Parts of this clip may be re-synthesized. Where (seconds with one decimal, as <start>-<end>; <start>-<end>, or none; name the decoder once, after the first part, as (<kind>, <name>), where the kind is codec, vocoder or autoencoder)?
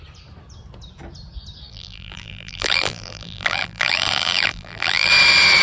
1.7-5.1 (vocoder, BigVGAN v2)